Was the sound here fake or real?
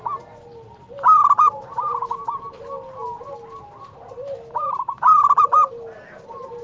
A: real